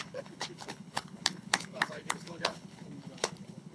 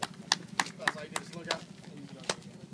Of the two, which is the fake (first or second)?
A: first